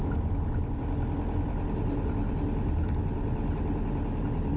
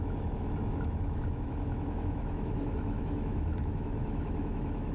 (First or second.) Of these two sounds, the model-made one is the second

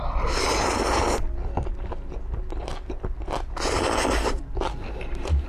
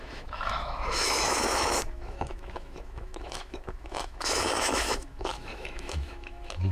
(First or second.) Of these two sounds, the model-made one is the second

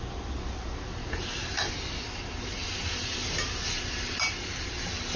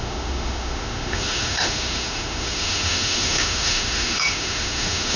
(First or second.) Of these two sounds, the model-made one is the second